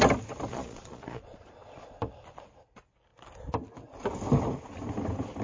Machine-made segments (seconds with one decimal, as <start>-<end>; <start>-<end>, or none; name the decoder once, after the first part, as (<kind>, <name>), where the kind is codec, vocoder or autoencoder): 0.5-2.0 (vocoder, Vocos)